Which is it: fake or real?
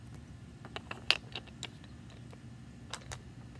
real